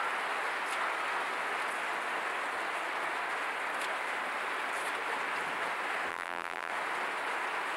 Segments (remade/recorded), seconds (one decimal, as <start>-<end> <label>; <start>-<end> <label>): 0.0-6.1 recorded; 6.1-6.7 remade; 6.7-7.8 recorded